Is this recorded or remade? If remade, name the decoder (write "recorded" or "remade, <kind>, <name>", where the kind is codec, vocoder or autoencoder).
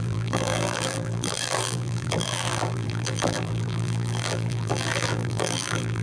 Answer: remade, vocoder, BigVGAN v2